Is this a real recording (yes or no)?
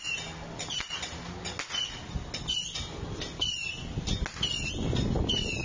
yes